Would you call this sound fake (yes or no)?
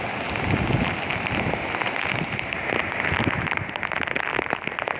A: no